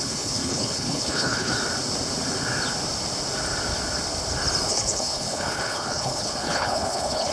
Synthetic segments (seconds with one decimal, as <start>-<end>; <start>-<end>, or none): 0.0-1.5; 4.7-7.3

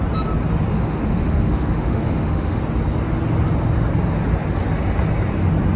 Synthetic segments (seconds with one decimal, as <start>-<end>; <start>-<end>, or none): 0.7-2.6

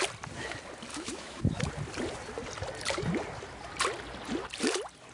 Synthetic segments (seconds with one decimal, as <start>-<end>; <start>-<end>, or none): 0.9-1.7

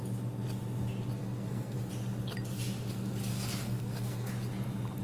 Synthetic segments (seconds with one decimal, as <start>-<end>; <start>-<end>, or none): 1.2-1.9; 3.2-4.3